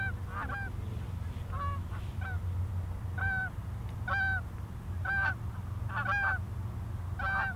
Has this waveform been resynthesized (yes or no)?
no